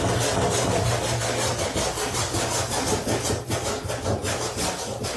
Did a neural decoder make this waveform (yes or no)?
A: no